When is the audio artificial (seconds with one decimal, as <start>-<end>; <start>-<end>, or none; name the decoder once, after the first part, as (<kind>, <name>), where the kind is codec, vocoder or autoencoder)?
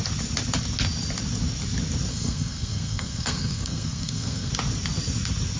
2.1-4.5 (codec, SNAC)